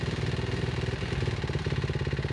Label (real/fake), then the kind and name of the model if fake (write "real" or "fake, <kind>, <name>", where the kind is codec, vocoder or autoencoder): real